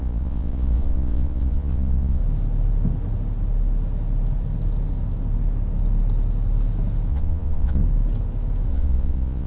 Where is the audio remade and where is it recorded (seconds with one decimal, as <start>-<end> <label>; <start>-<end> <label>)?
0.0-2.2 remade; 2.2-7.1 recorded; 7.1-7.8 remade; 7.8-8.7 recorded; 8.7-9.5 remade